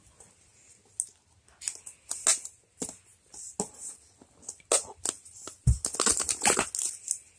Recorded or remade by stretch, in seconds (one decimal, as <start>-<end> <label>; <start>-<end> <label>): 0.0-6.1 recorded; 6.1-6.6 remade; 6.6-7.4 recorded